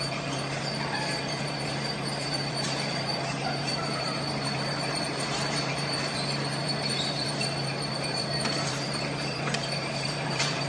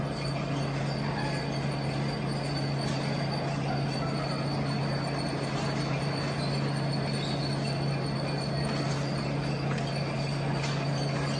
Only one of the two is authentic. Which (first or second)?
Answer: second